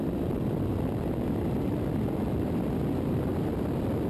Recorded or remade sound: recorded